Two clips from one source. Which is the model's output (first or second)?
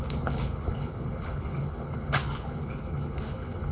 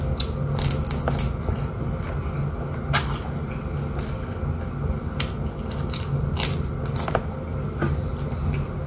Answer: first